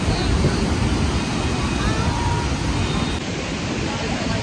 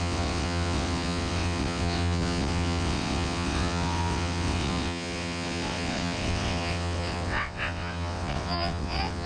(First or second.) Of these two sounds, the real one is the first